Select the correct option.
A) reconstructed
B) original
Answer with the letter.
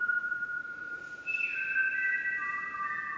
B